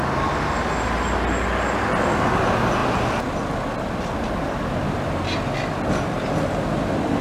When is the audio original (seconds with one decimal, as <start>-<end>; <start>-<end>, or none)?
0.0-7.2